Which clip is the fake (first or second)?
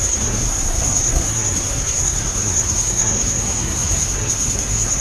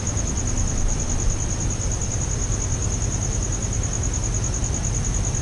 first